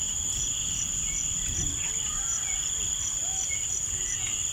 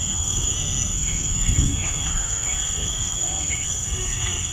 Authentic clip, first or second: first